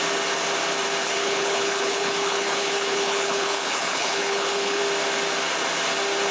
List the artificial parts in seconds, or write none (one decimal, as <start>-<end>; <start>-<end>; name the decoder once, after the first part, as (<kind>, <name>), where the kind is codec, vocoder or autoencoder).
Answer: 1.0-4.8 (codec, HILCodec)